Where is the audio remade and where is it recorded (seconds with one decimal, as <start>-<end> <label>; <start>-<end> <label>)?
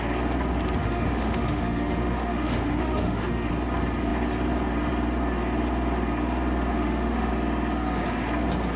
0.0-0.8 recorded; 0.8-3.5 remade; 3.5-6.7 recorded; 6.7-7.3 remade; 7.3-8.8 recorded